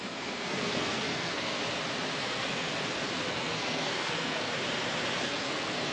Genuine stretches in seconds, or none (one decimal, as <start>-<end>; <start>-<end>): 1.6-2.2; 2.7-3.3; 4.5-5.2